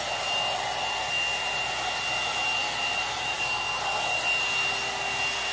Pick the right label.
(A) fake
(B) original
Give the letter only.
B